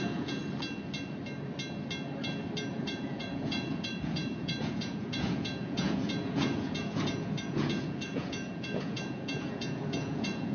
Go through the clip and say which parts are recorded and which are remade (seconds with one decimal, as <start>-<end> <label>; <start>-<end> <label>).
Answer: 0.0-0.4 remade; 0.4-2.7 recorded; 2.7-10.5 remade